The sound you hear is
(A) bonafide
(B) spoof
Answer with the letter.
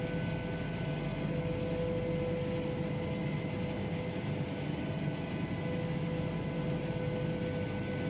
A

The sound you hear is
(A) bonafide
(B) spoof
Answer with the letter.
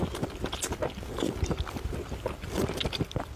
A